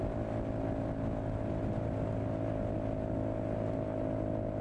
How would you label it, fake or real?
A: real